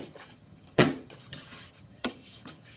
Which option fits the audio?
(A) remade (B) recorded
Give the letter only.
A